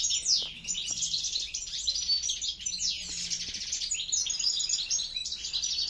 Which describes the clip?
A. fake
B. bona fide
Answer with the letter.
B